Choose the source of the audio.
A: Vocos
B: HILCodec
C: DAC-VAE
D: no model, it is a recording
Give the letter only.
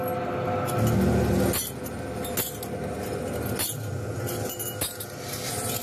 D